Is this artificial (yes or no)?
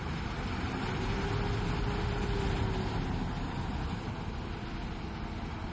no